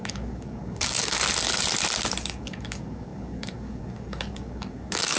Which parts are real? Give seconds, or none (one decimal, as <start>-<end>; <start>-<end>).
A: 1.2-2.2